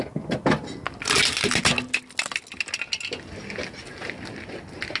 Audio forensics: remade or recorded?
recorded